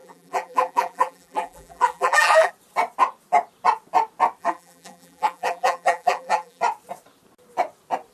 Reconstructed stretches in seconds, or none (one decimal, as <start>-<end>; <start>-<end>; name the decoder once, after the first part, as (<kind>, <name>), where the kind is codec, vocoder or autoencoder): 0.0-2.5 (vocoder, BigVGAN v2); 4.4-6.6